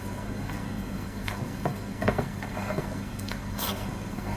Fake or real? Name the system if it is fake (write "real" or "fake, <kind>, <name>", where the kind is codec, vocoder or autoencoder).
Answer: fake, codec, SNAC